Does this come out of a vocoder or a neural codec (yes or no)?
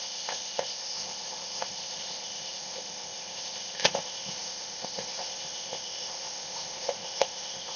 yes